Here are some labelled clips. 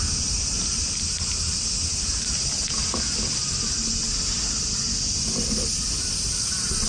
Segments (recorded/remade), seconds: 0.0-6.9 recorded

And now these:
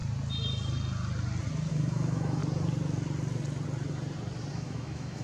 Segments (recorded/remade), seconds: 0.0-1.7 recorded; 1.7-2.4 remade; 2.4-4.5 recorded; 4.5-5.2 remade

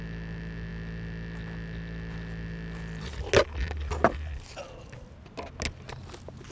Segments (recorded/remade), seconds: 0.0-6.5 recorded

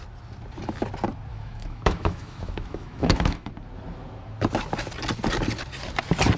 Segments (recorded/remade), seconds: 0.0-1.3 recorded; 1.3-3.5 remade; 3.5-6.4 recorded